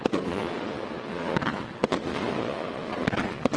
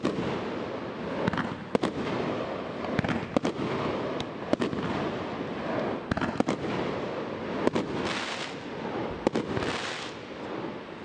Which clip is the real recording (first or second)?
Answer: second